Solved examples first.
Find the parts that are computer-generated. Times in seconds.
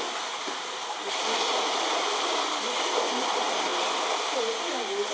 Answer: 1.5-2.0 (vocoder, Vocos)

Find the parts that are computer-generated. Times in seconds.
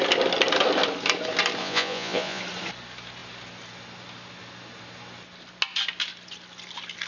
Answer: 1.6-2.4 (vocoder, Vocos)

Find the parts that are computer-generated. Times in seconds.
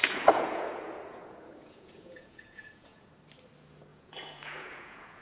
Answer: 0.0-3.1 (vocoder, Vocos); 3.9-5.2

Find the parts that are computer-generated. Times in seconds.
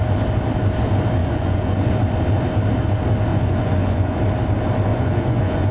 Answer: 1.2-1.9 (vocoder, Vocos); 3.3-4.2; 4.9-5.7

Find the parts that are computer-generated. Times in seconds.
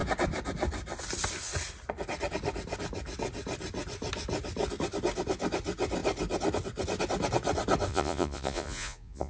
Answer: 7.9-9.3 (vocoder, Vocos)